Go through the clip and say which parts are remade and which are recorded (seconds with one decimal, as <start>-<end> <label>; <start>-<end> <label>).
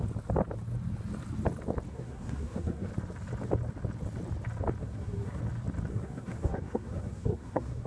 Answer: 0.0-1.9 recorded; 1.9-2.9 remade; 2.9-4.8 recorded; 4.8-5.4 remade; 5.4-5.9 recorded; 5.9-7.9 remade